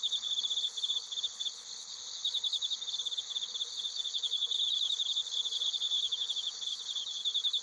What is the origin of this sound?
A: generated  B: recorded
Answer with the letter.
A